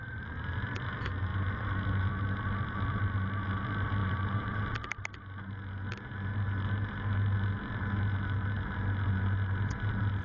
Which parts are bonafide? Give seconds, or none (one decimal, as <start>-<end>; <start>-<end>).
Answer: 0.0-4.0; 4.6-10.2